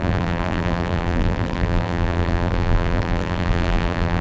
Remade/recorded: remade